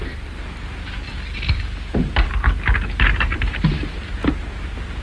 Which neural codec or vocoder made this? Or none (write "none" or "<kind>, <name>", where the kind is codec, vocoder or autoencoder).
none